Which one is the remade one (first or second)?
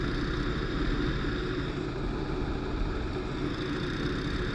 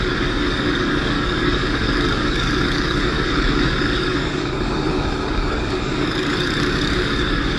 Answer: second